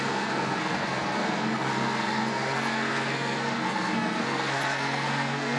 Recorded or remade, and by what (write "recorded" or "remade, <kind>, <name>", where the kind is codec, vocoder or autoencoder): remade, codec, SNAC